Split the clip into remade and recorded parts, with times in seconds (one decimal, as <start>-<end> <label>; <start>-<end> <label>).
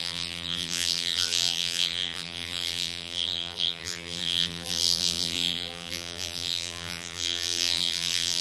0.0-8.4 remade